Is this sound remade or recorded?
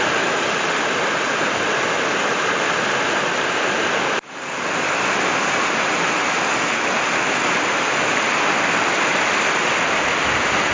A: recorded